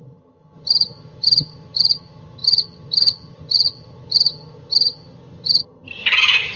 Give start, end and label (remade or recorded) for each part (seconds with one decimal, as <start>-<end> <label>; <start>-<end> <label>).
0.0-6.6 remade